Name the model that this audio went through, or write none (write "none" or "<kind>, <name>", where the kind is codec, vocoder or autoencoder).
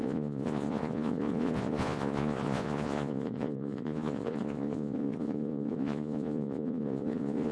vocoder, Vocos